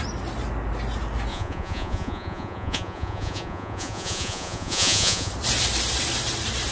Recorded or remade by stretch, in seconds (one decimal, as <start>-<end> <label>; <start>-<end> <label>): 0.0-1.3 recorded; 1.3-5.3 remade; 5.3-6.7 recorded